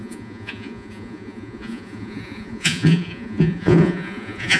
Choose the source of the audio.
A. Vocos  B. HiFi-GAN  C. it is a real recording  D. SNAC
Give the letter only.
A